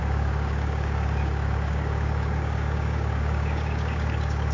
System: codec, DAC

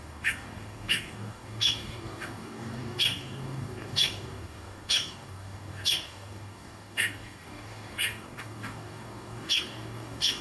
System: codec, DAC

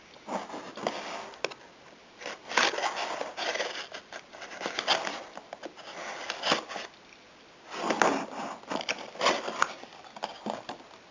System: none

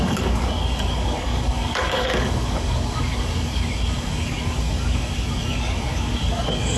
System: codec, DAC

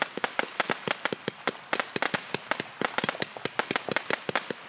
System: none